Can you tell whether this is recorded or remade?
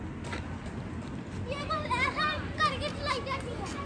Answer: recorded